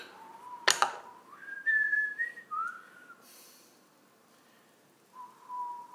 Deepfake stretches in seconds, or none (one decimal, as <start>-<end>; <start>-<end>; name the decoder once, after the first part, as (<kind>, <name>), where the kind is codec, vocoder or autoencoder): none